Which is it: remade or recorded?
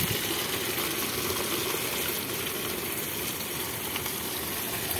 recorded